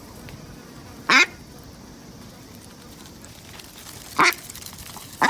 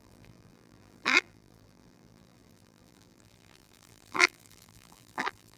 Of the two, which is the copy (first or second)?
second